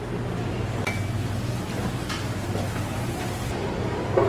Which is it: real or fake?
real